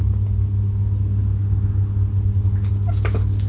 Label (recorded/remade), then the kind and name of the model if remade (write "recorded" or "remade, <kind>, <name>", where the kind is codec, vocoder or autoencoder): recorded